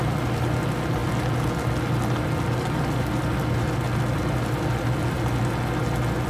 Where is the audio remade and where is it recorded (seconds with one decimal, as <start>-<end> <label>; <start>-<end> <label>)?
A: 0.0-6.3 recorded